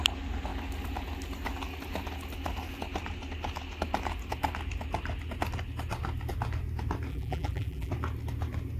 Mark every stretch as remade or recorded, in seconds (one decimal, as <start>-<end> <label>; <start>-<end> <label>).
0.0-7.1 recorded; 7.1-7.9 remade; 7.9-8.8 recorded

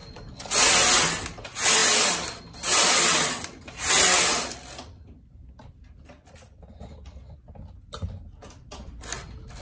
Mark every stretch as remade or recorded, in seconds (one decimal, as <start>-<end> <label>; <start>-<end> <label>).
0.0-9.6 recorded

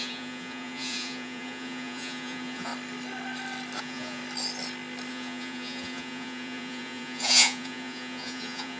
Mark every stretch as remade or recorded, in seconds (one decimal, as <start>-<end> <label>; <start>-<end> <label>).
0.0-2.7 remade; 2.7-3.8 recorded; 3.8-4.2 remade; 4.2-5.1 recorded; 5.1-8.8 remade

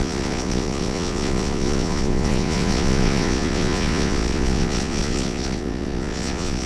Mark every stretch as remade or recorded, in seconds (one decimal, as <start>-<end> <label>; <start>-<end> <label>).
0.0-6.7 remade

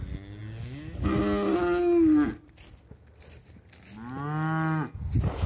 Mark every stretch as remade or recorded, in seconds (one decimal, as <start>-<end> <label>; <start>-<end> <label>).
0.0-5.5 recorded

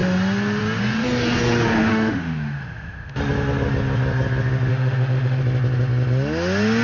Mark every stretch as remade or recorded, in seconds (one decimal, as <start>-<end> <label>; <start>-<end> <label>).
0.0-1.9 recorded; 1.9-3.2 remade; 3.2-4.7 recorded; 4.7-5.4 remade; 5.4-6.8 recorded